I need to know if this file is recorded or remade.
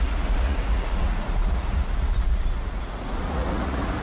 remade